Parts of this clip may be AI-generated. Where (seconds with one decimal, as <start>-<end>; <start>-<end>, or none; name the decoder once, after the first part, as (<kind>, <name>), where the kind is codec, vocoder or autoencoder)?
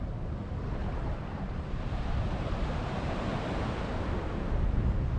0.8-3.9 (vocoder, BigVGAN v2)